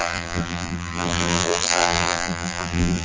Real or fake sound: fake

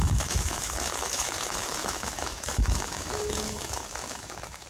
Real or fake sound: fake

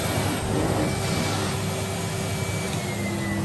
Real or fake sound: real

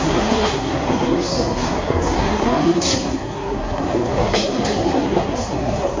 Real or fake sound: fake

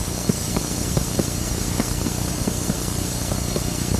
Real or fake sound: fake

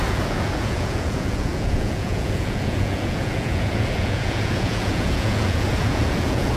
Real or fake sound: fake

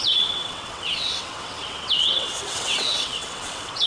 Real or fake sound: fake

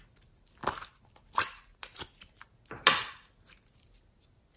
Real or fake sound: real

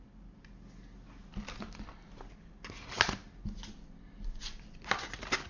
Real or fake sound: real